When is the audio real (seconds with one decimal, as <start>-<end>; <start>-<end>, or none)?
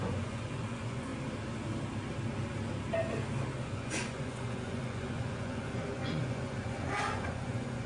1.1-3.6